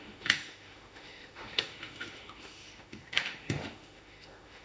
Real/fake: fake